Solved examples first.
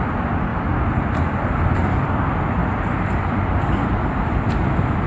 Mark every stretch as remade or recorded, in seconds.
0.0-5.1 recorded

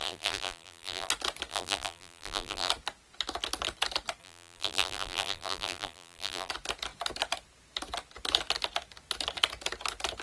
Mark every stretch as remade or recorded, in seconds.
0.0-1.1 remade; 1.1-1.5 recorded; 1.5-2.7 remade; 2.7-4.2 recorded; 4.2-6.5 remade; 6.5-10.2 recorded

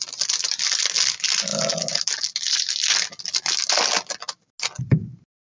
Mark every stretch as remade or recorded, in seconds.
0.0-5.5 recorded

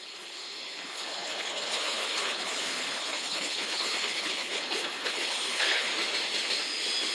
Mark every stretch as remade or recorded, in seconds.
0.0-5.9 remade; 5.9-7.1 recorded